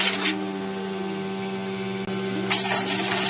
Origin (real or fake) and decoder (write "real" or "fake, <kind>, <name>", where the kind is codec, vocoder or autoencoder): real